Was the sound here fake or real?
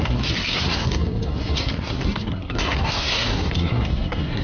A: fake